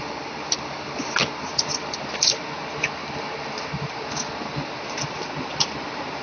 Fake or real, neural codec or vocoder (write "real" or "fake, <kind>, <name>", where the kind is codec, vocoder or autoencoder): real